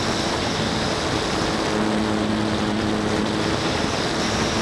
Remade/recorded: recorded